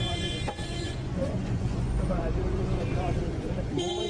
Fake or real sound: fake